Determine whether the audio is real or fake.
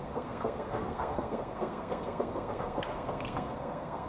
fake